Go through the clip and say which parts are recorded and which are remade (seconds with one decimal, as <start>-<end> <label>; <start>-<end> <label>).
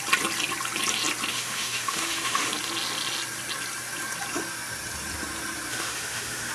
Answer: 0.0-1.3 recorded; 1.3-2.5 remade; 2.5-5.7 recorded; 5.7-6.5 remade